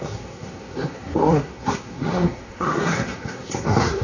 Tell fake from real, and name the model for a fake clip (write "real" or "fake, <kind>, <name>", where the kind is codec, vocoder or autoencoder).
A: fake, codec, SNAC